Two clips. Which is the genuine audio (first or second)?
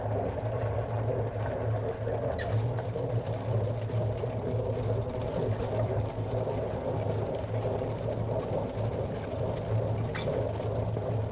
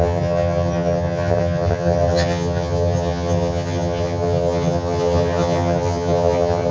first